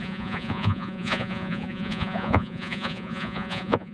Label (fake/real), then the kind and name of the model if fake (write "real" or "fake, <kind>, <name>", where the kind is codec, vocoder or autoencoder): fake, vocoder, Vocos